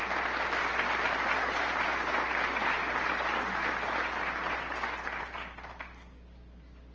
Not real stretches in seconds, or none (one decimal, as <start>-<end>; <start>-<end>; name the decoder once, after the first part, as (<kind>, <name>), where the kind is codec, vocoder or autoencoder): none